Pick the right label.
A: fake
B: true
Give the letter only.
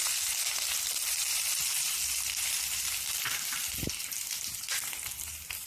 B